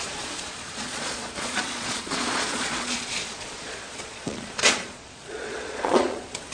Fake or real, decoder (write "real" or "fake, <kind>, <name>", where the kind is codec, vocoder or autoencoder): fake, vocoder, Vocos